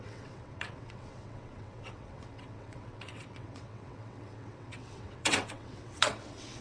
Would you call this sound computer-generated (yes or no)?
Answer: yes